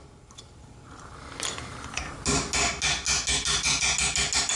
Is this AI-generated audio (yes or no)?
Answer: no